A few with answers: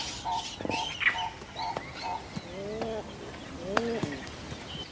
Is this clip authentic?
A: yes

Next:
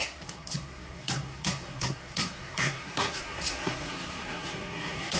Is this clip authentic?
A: no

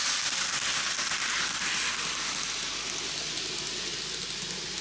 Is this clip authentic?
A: yes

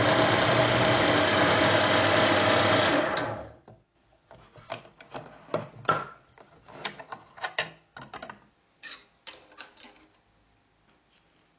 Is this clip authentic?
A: yes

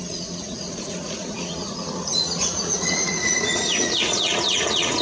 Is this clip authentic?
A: no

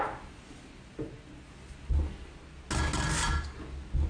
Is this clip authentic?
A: yes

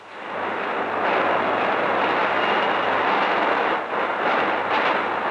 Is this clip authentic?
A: yes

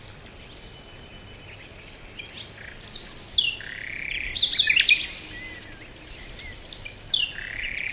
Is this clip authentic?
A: yes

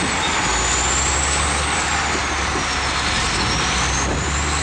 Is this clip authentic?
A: yes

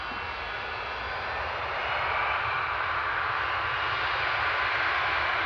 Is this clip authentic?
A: yes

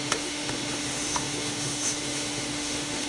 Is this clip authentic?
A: no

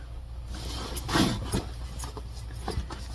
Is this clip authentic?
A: yes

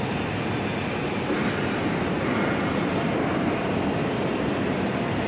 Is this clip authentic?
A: yes